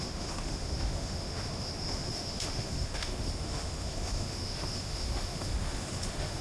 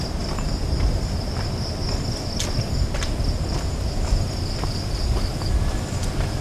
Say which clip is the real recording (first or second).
second